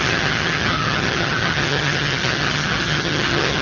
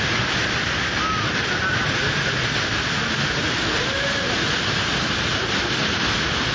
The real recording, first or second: second